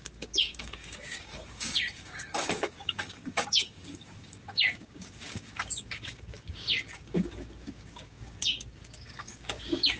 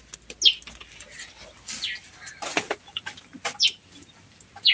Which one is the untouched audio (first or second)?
second